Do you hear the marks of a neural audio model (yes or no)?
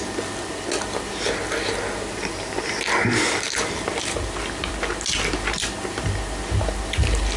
no